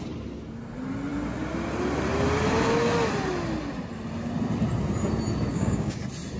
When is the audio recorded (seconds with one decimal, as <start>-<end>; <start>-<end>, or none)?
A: 0.0-5.5; 6.0-6.4